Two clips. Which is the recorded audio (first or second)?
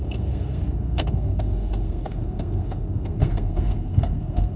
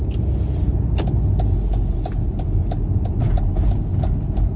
second